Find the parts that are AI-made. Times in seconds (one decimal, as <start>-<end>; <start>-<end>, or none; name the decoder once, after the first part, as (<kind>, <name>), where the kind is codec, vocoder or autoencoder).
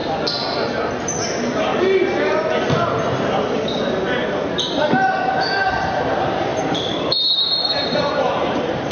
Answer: 1.0-1.7 (vocoder, BigVGAN v2); 5.7-8.9